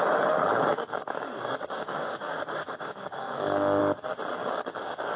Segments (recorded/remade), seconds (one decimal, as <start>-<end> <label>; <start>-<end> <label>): 0.0-0.7 recorded; 0.7-3.8 remade; 3.8-4.4 recorded; 4.4-5.2 remade